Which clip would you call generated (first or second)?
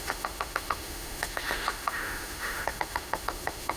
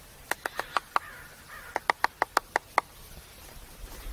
first